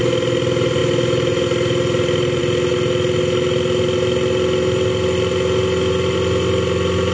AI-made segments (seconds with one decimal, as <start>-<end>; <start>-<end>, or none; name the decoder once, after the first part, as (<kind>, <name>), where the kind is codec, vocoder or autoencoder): none